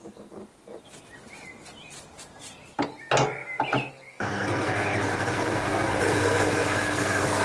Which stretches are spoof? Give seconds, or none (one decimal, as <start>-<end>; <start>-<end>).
0.0-0.4; 3.9-7.4